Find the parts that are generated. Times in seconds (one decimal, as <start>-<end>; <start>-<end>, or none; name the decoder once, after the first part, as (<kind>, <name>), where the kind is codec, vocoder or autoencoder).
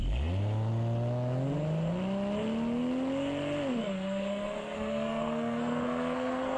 3.7-6.6 (codec, SNAC)